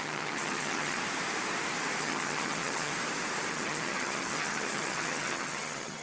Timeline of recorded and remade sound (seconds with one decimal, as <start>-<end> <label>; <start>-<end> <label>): 0.0-1.0 remade; 1.0-2.0 recorded; 2.0-2.9 remade; 2.9-3.5 recorded; 3.5-6.0 remade

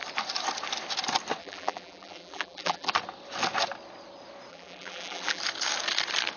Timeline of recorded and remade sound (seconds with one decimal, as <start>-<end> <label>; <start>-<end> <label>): 0.0-1.4 recorded; 1.4-2.9 remade; 2.9-4.5 recorded; 4.5-5.4 remade; 5.4-6.4 recorded

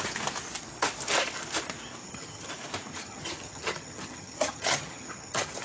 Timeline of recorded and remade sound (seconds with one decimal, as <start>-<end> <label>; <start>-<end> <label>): 0.0-2.0 recorded; 2.0-2.5 remade; 2.5-2.9 recorded; 2.9-5.6 remade

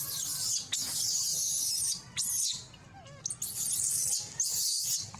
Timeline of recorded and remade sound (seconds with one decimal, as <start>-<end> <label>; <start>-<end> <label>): 0.0-5.2 recorded

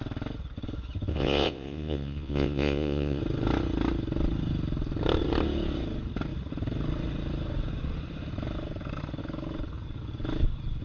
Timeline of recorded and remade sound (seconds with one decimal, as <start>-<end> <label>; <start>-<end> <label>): 0.0-1.1 recorded; 1.1-3.2 remade; 3.2-10.8 recorded